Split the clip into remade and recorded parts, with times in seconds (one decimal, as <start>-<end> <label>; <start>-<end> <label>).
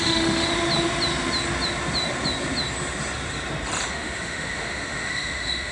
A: 0.0-0.5 remade; 0.5-3.9 recorded; 3.9-5.7 remade